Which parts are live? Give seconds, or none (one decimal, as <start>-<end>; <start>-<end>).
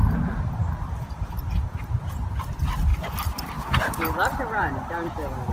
0.0-5.5